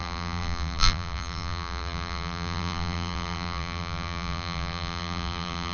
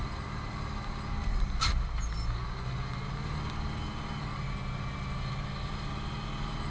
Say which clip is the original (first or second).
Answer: second